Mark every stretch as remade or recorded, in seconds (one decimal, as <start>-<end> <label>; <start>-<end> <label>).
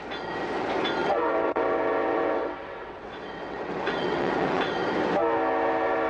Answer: 0.0-1.0 recorded; 1.0-4.7 remade; 4.7-6.1 recorded